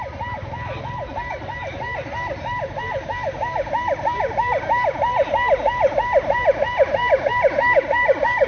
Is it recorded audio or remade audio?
recorded